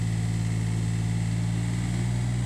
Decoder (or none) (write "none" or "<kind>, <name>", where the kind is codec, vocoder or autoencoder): none